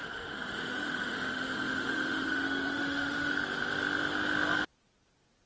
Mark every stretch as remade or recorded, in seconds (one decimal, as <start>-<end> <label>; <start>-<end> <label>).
0.0-3.3 remade; 3.3-5.5 recorded